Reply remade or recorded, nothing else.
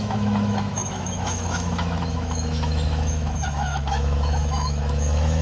remade